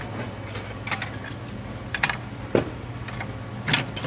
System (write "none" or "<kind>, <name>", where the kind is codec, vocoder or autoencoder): none